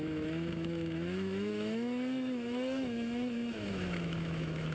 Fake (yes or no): yes